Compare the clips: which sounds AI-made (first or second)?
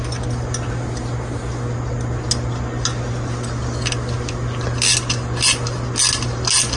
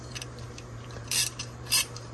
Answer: second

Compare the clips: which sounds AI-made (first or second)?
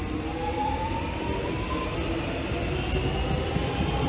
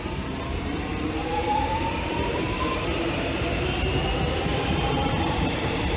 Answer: second